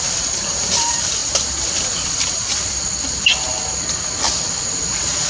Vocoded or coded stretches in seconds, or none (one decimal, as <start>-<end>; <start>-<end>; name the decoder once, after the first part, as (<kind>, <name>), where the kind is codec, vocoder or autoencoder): none